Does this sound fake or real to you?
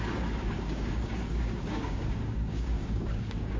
fake